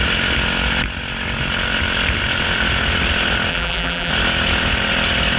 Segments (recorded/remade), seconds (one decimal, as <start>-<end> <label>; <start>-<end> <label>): 0.0-3.5 recorded; 3.5-4.1 remade; 4.1-5.4 recorded